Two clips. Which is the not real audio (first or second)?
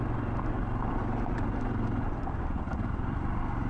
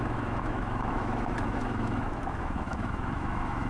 second